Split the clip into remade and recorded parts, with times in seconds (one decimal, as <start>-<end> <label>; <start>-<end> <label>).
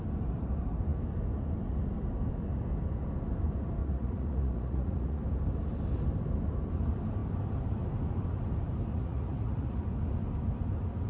0.0-3.8 recorded; 3.8-5.2 remade; 5.2-8.9 recorded; 8.9-9.8 remade; 9.8-11.1 recorded